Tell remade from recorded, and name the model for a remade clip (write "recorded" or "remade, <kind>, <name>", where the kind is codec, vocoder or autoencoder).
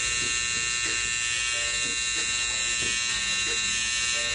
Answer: recorded